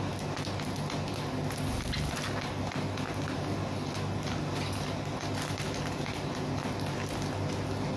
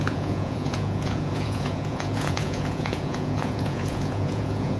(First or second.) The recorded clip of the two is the first